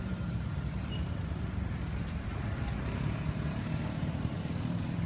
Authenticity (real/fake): fake